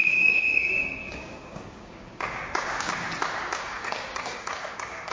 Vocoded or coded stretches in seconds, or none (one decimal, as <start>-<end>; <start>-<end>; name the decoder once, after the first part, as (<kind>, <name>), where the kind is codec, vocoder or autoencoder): 0.0-2.9 (codec, DAC); 3.5-5.1